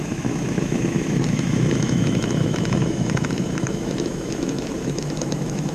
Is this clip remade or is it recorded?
remade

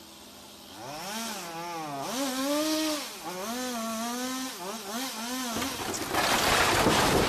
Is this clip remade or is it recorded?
recorded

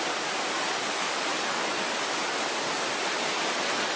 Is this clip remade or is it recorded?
recorded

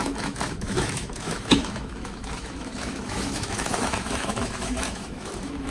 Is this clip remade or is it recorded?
remade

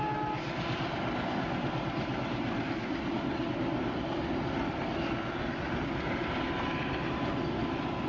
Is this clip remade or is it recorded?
recorded